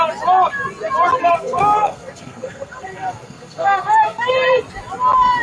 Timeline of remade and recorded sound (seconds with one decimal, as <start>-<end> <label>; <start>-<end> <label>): 0.0-1.2 recorded; 1.2-4.3 remade; 4.3-5.4 recorded

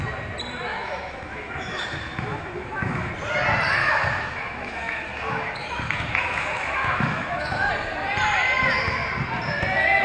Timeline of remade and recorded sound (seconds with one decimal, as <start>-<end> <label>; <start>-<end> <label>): 0.0-0.7 recorded; 0.7-3.1 remade; 3.1-3.8 recorded; 3.8-7.7 remade; 7.7-10.0 recorded

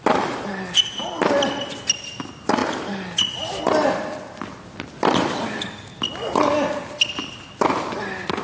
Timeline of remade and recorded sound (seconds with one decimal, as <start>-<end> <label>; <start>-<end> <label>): 0.0-8.4 recorded

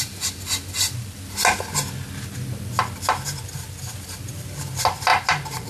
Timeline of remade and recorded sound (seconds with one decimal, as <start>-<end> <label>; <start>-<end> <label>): 0.0-5.7 recorded

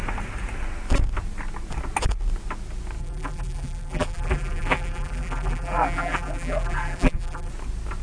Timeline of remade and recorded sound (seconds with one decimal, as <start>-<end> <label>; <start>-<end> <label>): 0.0-3.0 recorded; 3.0-7.5 remade; 7.5-8.0 recorded

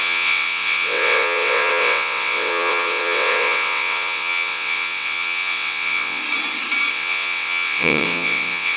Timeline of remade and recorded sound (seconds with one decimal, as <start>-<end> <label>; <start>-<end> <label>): 0.0-6.2 remade; 6.2-6.9 recorded; 6.9-8.8 remade